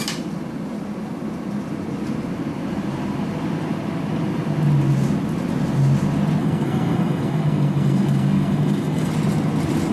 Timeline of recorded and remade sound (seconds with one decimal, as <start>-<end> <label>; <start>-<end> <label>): 0.0-6.4 recorded; 6.4-9.1 remade; 9.1-9.9 recorded